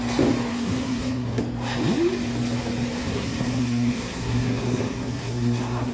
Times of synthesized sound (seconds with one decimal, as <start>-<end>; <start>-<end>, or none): 0.5-1.4; 3.0-5.9